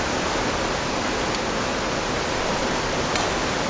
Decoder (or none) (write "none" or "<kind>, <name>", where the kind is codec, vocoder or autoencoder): none